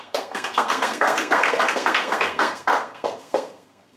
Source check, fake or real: fake